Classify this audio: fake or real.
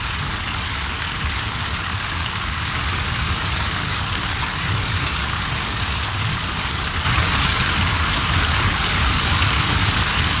fake